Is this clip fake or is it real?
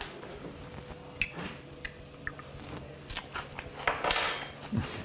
real